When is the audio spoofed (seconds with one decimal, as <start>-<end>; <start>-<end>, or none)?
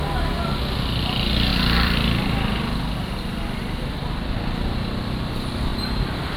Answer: 1.5-5.3; 5.7-6.4